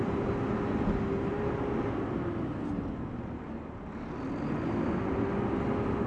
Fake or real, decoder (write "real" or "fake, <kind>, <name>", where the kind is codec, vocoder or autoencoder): real